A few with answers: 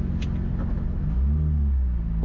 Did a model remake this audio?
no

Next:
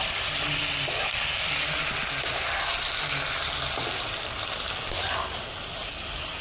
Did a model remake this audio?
no